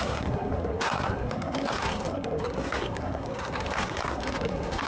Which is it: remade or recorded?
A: remade